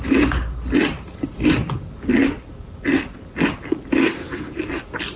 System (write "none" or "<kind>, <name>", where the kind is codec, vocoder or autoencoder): none